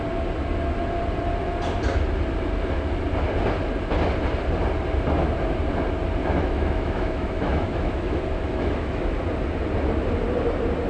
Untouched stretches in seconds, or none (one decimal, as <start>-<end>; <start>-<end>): 0.0-6.2; 9.0-10.9